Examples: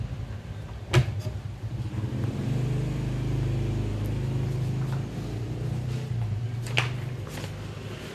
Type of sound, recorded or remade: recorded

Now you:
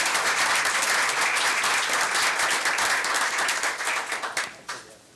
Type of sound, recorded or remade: recorded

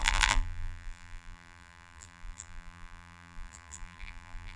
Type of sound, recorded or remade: remade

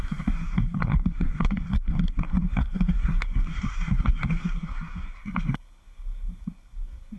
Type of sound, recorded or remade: remade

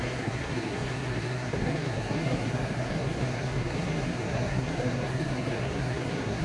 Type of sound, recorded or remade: remade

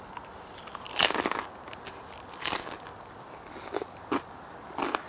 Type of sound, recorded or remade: recorded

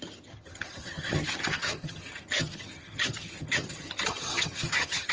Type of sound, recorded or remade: remade